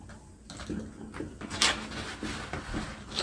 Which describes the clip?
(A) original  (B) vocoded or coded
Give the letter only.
A